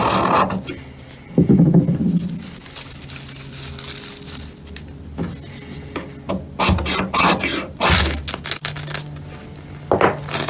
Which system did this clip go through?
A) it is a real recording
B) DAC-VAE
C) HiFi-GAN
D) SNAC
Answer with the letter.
A